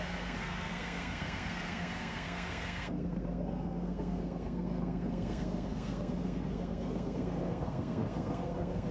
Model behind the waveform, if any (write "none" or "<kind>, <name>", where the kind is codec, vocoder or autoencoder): codec, SNAC